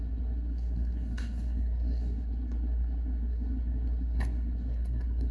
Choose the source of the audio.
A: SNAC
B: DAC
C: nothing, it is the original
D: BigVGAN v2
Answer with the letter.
A